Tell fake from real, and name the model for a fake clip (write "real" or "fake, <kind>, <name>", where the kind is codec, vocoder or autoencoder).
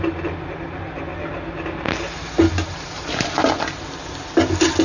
real